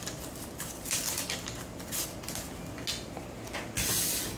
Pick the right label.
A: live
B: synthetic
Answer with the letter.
A